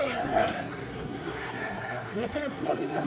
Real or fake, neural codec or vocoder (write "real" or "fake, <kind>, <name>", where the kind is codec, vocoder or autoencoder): fake, codec, SNAC